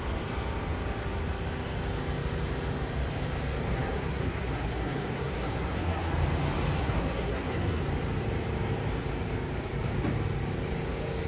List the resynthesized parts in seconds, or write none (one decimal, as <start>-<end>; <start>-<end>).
3.7-6.1; 6.8-7.8